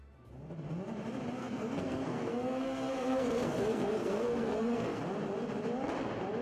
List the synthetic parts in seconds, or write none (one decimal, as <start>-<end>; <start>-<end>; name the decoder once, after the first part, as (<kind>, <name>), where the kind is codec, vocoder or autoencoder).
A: 1.4-5.0 (codec, SNAC)